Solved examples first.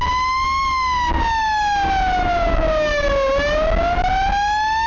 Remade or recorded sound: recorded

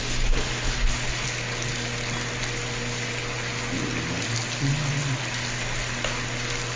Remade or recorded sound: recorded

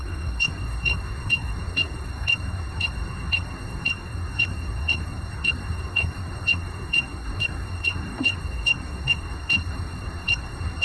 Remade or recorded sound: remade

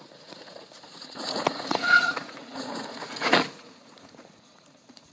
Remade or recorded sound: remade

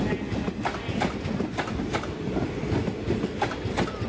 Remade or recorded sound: recorded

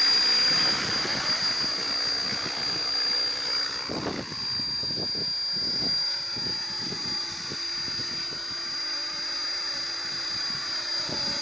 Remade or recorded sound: recorded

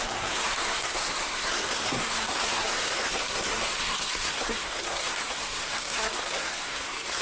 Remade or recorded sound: remade